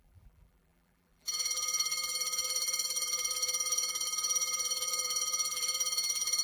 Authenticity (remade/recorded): remade